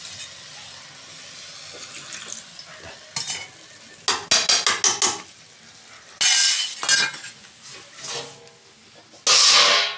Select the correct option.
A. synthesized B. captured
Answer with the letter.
B